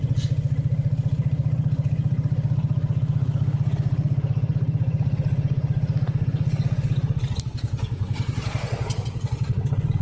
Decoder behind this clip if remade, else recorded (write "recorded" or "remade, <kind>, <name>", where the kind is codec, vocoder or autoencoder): recorded